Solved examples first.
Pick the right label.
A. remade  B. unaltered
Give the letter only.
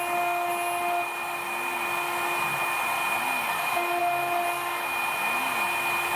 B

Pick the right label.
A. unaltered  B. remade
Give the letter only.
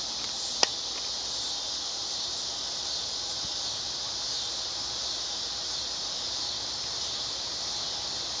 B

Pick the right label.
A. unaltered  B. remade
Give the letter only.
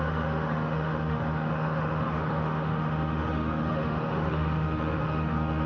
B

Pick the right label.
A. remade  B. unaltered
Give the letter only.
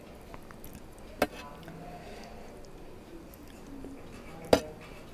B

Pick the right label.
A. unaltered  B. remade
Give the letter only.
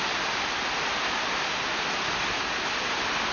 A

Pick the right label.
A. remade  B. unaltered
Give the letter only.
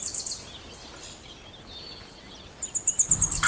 B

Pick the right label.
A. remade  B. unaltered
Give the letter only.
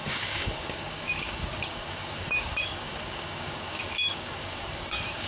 A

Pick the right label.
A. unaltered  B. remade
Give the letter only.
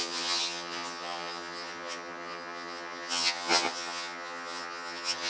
B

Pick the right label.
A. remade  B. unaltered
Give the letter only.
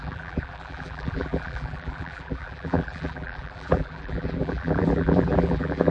A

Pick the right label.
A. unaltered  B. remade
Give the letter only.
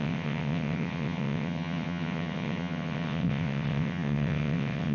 B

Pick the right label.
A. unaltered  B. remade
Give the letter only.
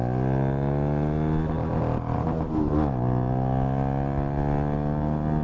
A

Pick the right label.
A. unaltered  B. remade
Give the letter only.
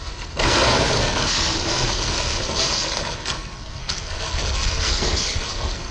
B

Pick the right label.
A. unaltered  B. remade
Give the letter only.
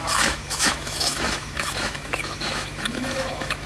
B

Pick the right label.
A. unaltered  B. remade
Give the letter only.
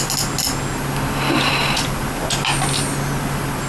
A